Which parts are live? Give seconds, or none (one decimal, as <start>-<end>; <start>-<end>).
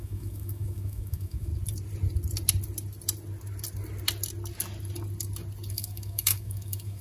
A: 1.5-5.7